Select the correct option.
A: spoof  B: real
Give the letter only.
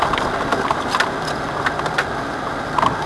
B